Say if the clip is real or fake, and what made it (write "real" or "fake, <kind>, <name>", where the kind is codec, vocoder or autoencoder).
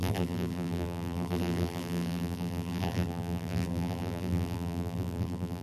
fake, vocoder, BigVGAN v2